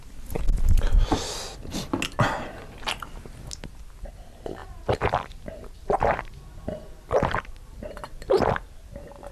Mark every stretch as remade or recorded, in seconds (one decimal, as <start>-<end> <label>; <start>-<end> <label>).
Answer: 0.0-4.6 recorded; 4.6-8.5 remade; 8.5-9.3 recorded

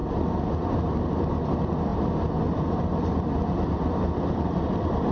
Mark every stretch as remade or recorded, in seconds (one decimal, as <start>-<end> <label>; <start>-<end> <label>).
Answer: 0.0-1.9 recorded; 1.9-5.1 remade